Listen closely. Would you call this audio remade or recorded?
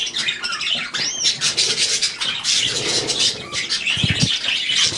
recorded